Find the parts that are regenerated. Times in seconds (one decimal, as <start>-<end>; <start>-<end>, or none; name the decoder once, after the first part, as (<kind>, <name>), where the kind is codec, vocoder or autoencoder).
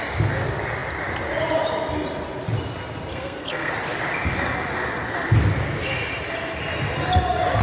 3.1-3.7 (codec, SNAC)